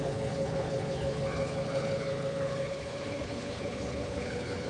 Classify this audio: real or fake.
fake